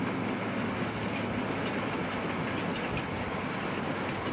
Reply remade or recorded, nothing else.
recorded